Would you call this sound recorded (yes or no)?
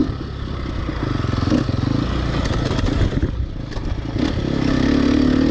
yes